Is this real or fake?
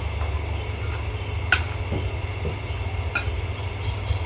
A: real